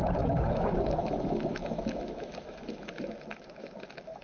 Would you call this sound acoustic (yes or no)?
no